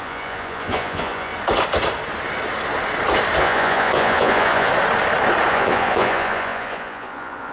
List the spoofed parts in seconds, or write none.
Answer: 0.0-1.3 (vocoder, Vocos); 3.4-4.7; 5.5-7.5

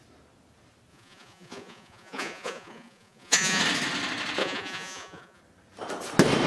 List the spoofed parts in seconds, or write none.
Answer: 0.9-3.6 (vocoder, Vocos); 4.4-5.4